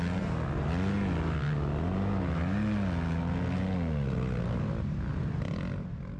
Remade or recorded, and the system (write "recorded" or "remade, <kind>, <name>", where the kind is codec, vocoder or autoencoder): recorded